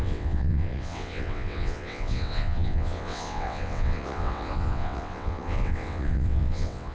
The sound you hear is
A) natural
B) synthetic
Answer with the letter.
B